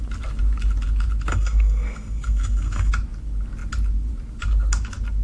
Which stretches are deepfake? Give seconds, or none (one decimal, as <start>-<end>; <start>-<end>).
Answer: 1.3-2.9